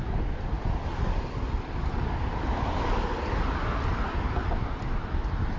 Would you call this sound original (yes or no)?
yes